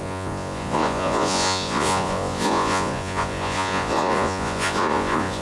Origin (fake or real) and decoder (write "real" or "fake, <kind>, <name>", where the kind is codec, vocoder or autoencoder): fake, vocoder, Vocos